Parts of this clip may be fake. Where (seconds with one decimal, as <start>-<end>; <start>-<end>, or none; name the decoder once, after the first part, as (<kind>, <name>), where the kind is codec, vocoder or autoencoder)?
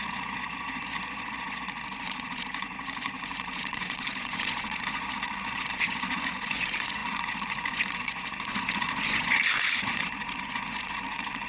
0.0-11.5 (vocoder, Vocos)